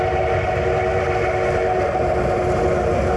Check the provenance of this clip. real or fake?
real